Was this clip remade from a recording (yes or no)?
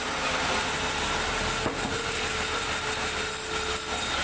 no